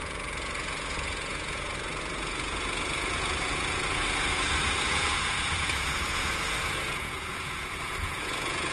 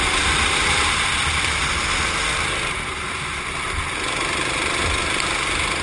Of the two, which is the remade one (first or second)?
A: first